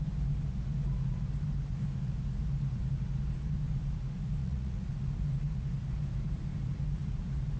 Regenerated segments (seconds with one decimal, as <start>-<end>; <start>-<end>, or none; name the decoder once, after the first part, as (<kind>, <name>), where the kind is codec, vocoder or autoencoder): 4.4-4.9 (vocoder, Vocos)